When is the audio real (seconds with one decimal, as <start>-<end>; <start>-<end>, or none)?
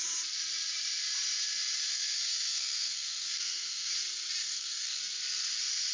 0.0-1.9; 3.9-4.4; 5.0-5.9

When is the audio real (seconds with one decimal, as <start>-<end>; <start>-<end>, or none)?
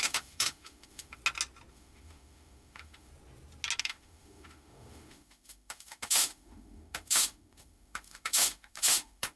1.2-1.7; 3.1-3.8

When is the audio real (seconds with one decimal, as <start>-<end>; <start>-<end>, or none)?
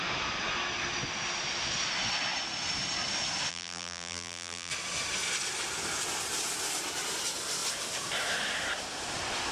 0.0-3.5; 4.7-9.5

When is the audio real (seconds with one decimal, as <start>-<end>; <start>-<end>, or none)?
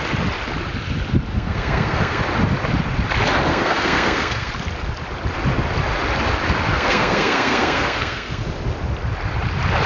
0.0-1.3; 2.2-3.5; 4.5-6.7; 8.4-9.9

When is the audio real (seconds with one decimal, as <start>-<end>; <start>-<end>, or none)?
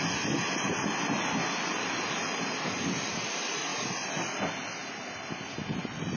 0.0-1.4; 2.1-3.7; 4.3-6.2